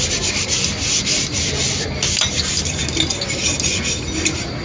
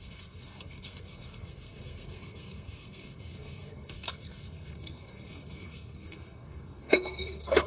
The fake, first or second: second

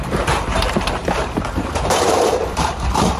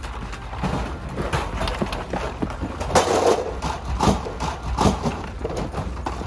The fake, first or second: first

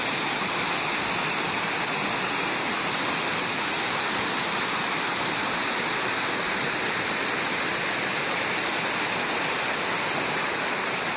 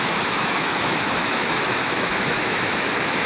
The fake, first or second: second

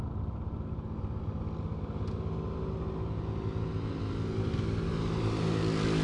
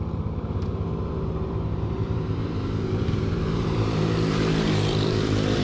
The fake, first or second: second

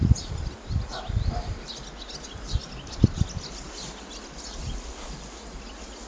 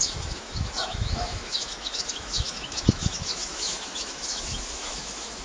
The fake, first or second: second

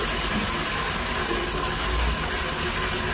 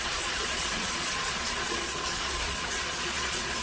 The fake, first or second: second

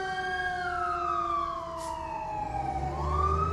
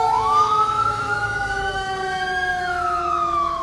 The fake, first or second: second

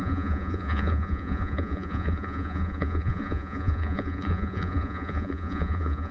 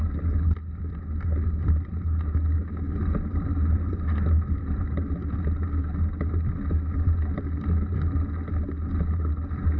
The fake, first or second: first